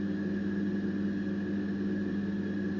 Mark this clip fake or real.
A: real